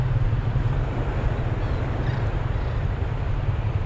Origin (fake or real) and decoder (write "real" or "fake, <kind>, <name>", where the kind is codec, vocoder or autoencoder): real